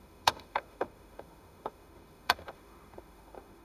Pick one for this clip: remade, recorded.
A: remade